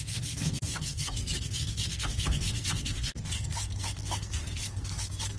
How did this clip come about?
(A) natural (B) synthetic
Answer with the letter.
B